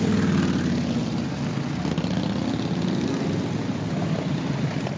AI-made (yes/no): no